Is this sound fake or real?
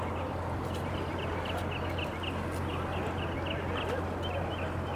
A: real